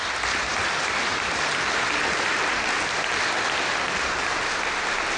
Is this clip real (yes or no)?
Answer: yes